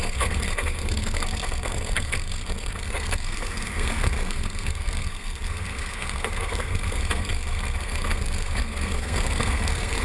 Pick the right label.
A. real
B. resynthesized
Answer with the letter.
B